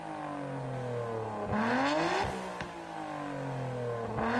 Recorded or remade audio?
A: recorded